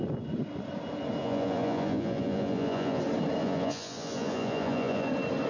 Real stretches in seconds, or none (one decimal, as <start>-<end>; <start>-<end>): 0.0-1.2; 3.0-3.4; 5.1-5.5